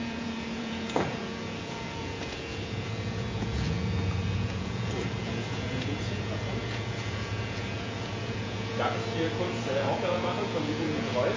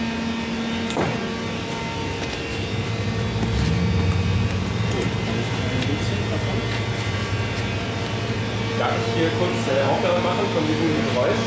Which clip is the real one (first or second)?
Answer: second